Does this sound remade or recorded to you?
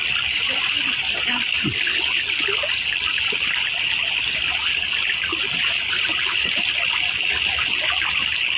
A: recorded